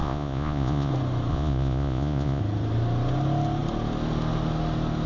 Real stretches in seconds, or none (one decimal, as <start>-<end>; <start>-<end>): 0.9-1.3; 2.4-5.1

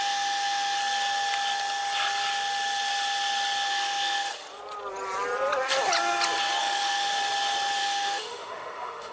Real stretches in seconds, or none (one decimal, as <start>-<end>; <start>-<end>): 0.8-3.7; 4.3-6.6; 7.1-7.8